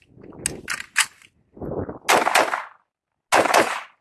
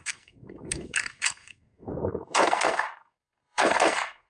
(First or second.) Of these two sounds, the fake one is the second